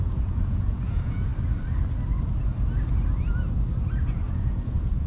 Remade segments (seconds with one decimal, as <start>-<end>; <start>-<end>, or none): 0.0-1.3; 4.4-5.1